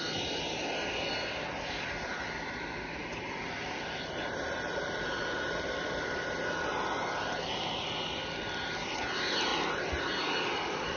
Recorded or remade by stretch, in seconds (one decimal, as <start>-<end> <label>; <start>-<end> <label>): 0.0-3.0 recorded; 3.0-6.3 remade; 6.3-11.0 recorded